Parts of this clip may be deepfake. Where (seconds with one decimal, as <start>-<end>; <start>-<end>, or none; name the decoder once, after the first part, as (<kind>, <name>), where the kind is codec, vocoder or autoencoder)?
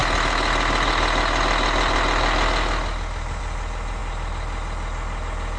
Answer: none